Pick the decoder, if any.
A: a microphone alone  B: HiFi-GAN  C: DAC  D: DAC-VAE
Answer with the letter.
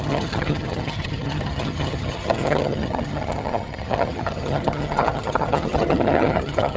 B